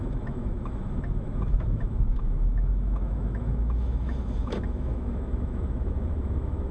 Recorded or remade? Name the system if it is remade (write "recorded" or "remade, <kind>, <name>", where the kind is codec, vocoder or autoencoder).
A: remade, autoencoder, DAC-VAE